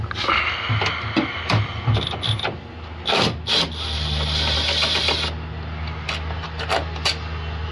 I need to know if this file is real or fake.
real